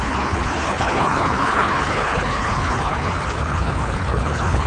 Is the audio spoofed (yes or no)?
yes